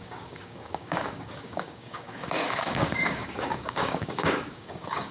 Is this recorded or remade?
remade